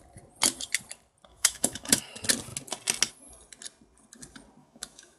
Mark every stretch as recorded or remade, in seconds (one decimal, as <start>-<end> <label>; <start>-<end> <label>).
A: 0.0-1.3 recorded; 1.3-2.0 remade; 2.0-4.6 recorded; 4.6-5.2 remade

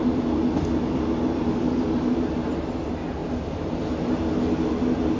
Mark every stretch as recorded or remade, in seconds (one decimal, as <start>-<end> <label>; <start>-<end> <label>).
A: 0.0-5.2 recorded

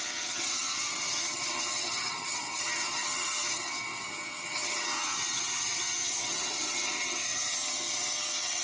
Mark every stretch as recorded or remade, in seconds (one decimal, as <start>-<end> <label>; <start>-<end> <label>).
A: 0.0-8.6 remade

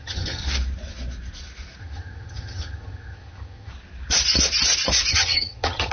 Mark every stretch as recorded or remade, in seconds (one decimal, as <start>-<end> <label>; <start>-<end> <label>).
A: 0.0-0.4 remade; 0.4-1.8 recorded; 1.8-3.7 remade; 3.7-5.1 recorded; 5.1-5.9 remade

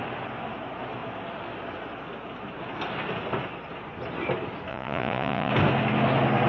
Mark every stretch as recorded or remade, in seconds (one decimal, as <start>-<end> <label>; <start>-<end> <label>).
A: 0.0-4.7 recorded; 4.7-5.5 remade; 5.5-6.5 recorded

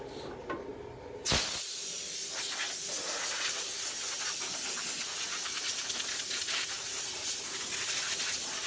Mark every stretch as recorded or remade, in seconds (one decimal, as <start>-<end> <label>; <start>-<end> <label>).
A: 0.0-8.7 recorded

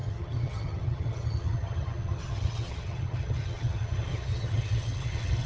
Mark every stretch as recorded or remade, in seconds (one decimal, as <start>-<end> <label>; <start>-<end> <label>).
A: 0.0-5.5 remade